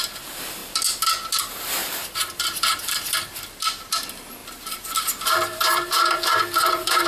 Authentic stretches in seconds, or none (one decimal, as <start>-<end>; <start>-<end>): 0.6-1.4